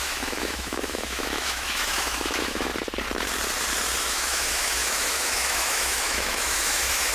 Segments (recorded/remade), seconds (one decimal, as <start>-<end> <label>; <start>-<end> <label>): 0.0-2.7 remade; 2.7-4.0 recorded; 4.0-7.1 remade